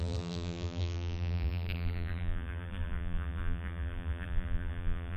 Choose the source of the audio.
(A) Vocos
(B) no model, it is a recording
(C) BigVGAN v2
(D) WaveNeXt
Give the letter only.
C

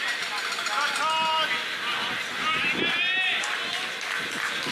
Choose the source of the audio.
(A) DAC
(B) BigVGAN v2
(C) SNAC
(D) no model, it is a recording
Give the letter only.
D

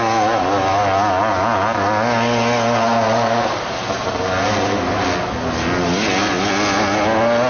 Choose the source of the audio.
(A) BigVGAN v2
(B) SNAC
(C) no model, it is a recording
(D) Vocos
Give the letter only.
C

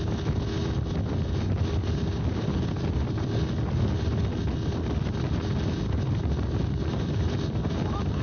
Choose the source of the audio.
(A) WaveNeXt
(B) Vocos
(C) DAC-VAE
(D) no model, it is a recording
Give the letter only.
D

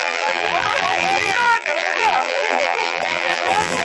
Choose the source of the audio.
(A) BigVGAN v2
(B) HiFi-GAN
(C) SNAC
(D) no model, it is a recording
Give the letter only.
A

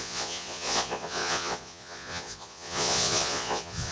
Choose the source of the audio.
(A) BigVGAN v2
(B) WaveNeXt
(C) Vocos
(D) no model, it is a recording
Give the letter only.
C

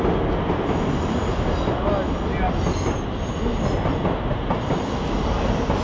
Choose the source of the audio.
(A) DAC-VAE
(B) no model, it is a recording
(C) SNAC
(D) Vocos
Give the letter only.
B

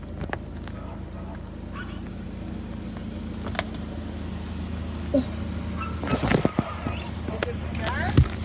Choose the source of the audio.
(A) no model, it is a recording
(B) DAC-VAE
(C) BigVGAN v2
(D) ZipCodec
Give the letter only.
A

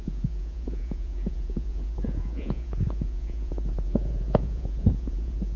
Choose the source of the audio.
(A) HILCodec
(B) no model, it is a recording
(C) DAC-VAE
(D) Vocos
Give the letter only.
D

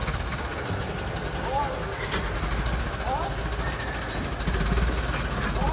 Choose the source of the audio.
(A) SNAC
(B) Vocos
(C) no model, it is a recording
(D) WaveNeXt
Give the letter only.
C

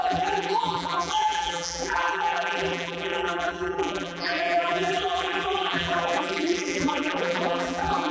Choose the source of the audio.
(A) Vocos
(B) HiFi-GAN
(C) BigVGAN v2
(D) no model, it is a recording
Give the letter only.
C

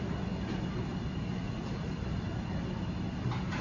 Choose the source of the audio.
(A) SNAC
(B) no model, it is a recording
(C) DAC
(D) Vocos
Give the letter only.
B